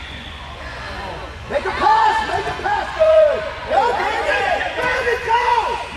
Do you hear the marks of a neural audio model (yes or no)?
yes